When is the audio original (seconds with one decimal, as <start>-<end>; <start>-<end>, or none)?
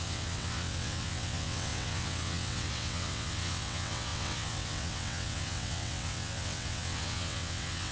none